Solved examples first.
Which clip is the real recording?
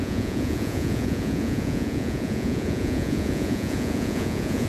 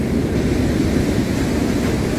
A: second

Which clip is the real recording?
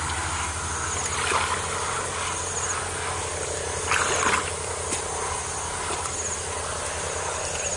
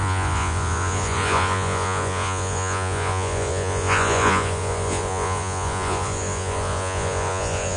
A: first